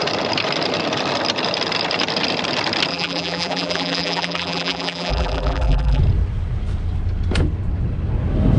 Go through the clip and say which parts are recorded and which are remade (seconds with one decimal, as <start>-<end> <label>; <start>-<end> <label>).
0.0-2.9 recorded; 2.9-6.0 remade; 6.0-8.6 recorded